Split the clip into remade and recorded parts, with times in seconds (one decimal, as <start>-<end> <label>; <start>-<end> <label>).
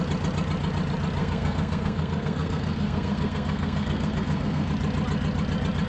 0.0-1.2 recorded; 1.2-4.7 remade; 4.7-5.9 recorded